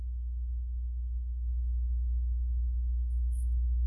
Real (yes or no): no